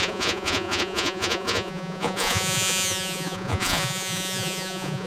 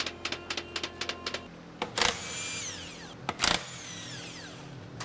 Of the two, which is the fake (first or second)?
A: first